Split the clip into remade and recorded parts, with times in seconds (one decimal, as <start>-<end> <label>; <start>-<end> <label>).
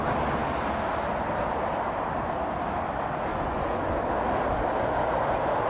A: 0.0-3.3 recorded; 3.3-4.0 remade; 4.0-5.7 recorded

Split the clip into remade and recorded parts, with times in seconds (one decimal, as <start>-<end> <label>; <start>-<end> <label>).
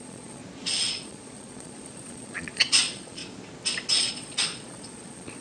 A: 0.0-0.4 remade; 0.4-0.9 recorded; 0.9-3.2 remade; 3.2-4.1 recorded; 4.1-5.4 remade